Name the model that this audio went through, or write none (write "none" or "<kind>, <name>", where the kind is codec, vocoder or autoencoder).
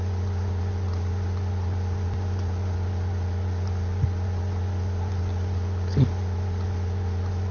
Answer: none